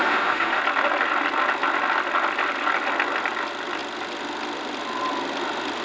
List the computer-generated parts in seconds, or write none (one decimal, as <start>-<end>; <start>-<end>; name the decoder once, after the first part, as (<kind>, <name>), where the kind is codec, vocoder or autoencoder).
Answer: 0.0-0.6 (autoencoder, DAC-VAE)